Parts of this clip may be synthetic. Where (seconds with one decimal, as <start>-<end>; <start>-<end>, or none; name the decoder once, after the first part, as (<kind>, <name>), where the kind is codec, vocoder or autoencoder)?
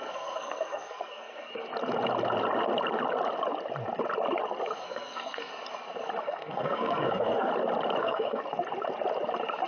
0.0-1.7 (codec, SNAC); 4.8-5.5; 6.2-7.5; 8.0-8.4